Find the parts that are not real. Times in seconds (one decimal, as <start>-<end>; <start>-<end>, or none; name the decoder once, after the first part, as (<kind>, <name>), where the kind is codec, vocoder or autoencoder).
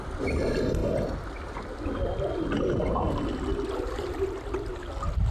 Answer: 3.5-4.7 (vocoder, BigVGAN v2)